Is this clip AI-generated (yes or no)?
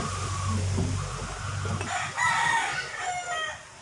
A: no